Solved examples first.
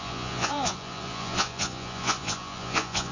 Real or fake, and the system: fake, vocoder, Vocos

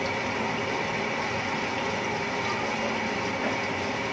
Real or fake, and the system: real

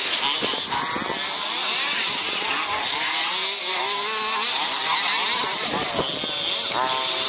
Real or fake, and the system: real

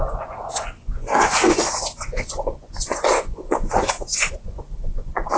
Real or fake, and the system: fake, vocoder, Vocos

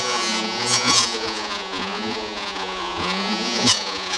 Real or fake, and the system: fake, vocoder, Vocos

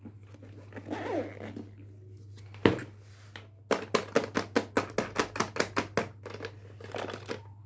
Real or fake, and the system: real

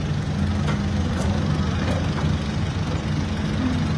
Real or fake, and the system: real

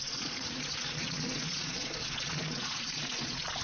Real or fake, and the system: fake, vocoder, Vocos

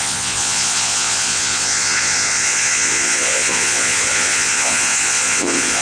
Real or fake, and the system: fake, vocoder, Vocos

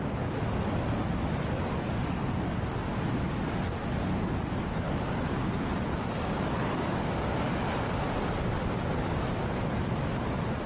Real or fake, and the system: real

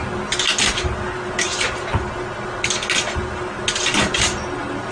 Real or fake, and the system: real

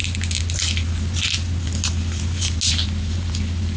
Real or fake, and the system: real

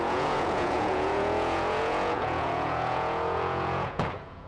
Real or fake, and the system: fake, vocoder, Vocos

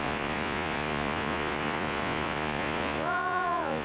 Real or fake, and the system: fake, vocoder, Vocos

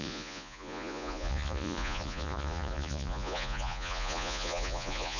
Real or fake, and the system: fake, vocoder, Vocos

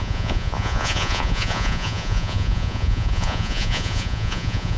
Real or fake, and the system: fake, vocoder, Vocos